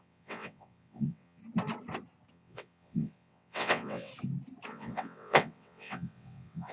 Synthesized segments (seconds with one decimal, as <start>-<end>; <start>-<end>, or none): 0.0-1.4; 2.3-4.1; 4.7-6.7